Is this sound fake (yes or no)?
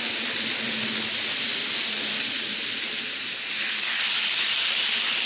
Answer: no